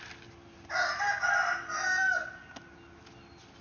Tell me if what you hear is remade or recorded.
recorded